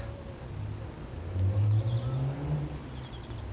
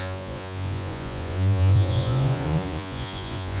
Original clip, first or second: first